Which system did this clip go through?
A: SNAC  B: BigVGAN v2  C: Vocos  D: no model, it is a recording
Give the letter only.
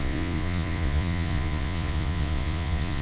C